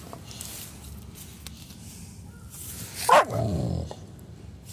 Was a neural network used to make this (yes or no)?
no